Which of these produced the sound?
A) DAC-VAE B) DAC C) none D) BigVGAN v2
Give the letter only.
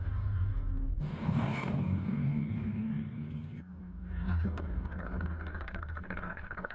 B